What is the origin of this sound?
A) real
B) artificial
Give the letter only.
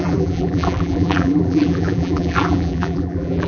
B